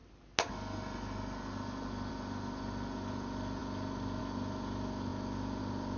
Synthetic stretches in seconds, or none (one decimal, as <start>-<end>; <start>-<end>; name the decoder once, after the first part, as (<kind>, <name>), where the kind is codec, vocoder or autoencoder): none